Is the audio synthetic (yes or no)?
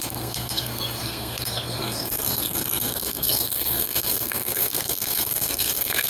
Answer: yes